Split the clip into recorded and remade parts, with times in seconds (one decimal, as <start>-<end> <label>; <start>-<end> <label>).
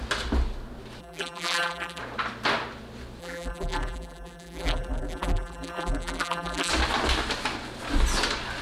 0.0-1.0 recorded; 1.0-2.0 remade; 2.0-3.2 recorded; 3.2-6.7 remade; 6.7-8.6 recorded